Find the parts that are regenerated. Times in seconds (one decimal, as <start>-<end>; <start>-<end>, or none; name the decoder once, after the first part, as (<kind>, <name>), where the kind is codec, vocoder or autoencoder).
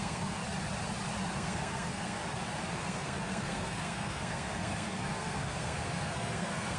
0.0-0.4 (codec, SNAC); 1.3-2.2; 2.8-6.8